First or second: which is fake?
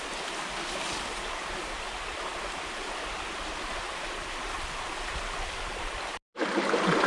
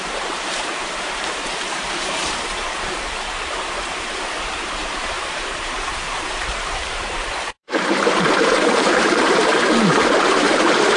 second